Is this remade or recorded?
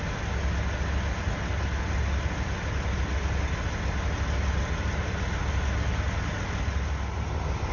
recorded